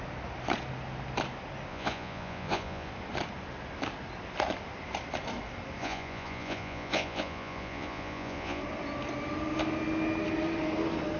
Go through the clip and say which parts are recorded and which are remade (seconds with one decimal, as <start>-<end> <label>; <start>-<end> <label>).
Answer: 0.0-1.7 recorded; 1.7-2.9 remade; 2.9-5.8 recorded; 5.8-8.6 remade; 8.6-11.2 recorded